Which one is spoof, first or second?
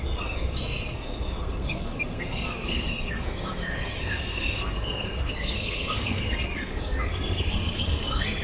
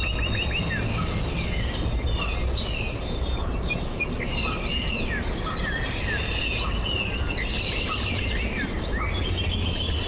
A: first